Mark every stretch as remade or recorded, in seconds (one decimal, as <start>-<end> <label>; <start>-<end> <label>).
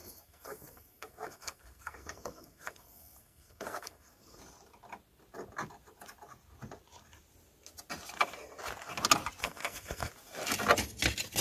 0.0-4.4 remade; 4.4-9.4 recorded; 9.4-10.1 remade; 10.1-11.4 recorded